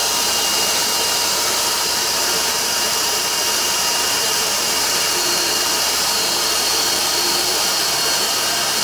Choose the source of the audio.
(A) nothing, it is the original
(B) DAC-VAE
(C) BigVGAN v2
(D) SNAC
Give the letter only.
C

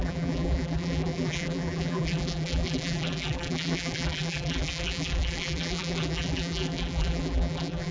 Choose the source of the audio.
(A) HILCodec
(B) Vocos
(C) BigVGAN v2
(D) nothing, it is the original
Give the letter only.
C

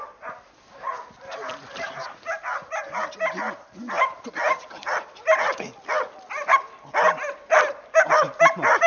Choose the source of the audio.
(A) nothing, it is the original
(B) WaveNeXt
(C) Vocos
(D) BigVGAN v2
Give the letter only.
A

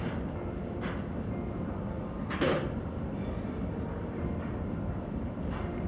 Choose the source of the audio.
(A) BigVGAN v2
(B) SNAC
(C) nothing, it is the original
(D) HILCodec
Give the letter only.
C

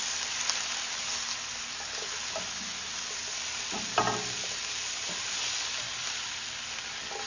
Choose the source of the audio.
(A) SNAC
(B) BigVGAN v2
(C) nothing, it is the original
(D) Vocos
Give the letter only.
C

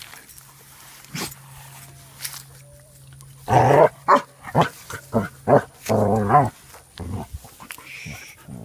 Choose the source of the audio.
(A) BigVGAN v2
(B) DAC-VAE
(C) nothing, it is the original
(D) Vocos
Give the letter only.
C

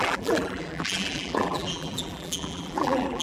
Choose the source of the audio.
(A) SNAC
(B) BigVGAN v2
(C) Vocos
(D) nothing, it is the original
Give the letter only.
B